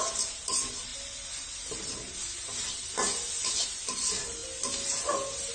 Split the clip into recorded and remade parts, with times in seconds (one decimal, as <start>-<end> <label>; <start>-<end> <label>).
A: 0.0-5.5 recorded